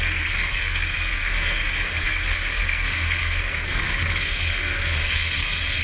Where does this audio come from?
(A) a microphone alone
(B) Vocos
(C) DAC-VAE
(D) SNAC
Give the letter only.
D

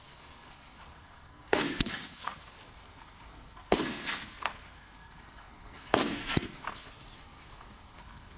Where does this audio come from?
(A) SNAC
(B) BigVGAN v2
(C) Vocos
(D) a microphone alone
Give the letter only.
A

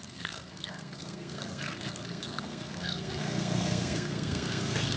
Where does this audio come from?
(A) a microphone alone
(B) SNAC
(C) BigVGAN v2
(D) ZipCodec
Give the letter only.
B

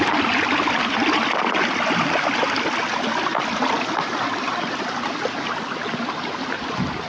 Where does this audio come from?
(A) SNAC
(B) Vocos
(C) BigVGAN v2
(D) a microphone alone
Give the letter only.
D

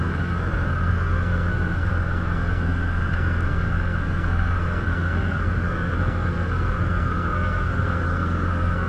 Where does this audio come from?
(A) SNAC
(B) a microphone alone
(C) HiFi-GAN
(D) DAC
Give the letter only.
A